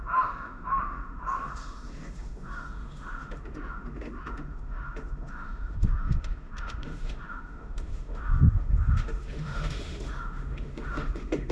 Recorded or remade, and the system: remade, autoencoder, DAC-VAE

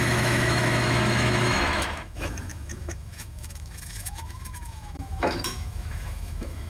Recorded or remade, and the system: remade, autoencoder, DAC-VAE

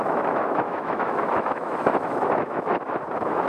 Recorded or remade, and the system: remade, autoencoder, DAC-VAE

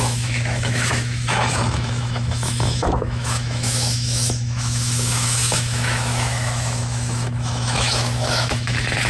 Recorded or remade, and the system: remade, autoencoder, DAC-VAE